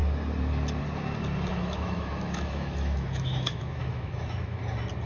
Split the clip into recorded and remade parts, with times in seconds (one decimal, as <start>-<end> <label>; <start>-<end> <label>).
0.0-1.5 recorded; 1.5-4.6 remade; 4.6-5.1 recorded